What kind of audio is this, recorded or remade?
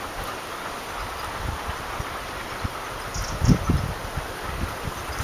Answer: recorded